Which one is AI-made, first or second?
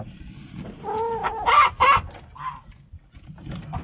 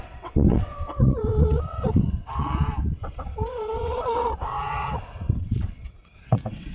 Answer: second